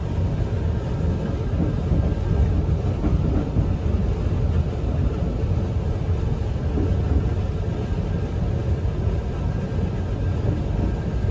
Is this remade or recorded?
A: recorded